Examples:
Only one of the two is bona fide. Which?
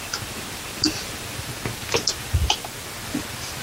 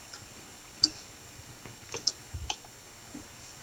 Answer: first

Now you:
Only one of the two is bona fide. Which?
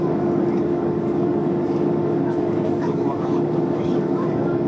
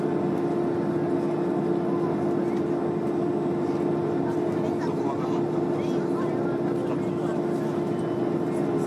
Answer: second